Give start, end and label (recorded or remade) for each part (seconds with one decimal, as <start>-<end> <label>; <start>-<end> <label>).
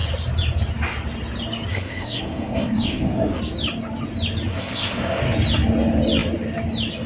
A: 0.0-1.7 recorded; 1.7-3.4 remade; 3.4-4.5 recorded; 4.5-5.2 remade; 5.2-7.1 recorded